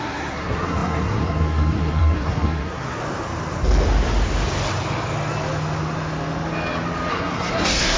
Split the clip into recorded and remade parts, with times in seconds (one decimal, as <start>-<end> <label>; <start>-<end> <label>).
0.0-3.0 remade; 3.0-7.1 recorded; 7.1-8.0 remade